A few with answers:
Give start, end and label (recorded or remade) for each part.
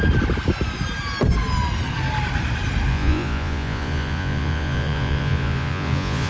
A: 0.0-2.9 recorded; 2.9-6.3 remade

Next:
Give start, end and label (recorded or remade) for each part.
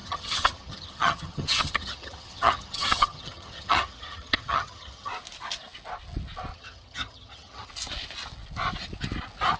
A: 0.0-5.1 remade; 5.1-6.5 recorded; 6.5-7.7 remade; 7.7-9.6 recorded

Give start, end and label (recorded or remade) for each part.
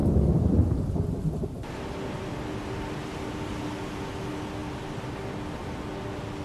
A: 0.0-6.4 recorded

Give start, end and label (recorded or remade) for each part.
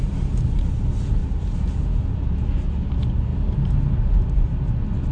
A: 0.0-1.2 recorded; 1.2-2.3 remade; 2.3-3.3 recorded; 3.3-3.8 remade; 3.8-5.1 recorded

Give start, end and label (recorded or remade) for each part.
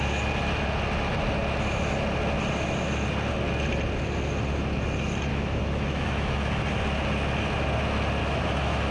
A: 0.0-5.3 recorded; 5.3-6.6 remade; 6.6-8.2 recorded; 8.2-8.9 remade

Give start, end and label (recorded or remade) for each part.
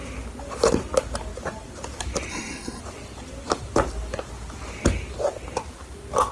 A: 0.0-2.3 recorded; 2.3-2.8 remade; 2.8-6.3 recorded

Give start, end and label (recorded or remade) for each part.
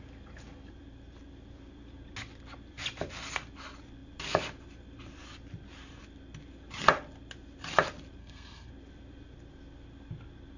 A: 0.0-8.2 recorded; 8.2-8.7 remade; 8.7-10.6 recorded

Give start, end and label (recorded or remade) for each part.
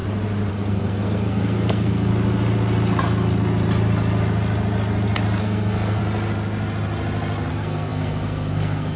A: 0.0-0.5 recorded; 0.5-2.1 remade; 2.1-5.4 recorded; 5.4-6.0 remade; 6.0-7.5 recorded; 7.5-9.0 remade